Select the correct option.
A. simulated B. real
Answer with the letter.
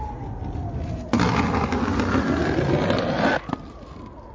B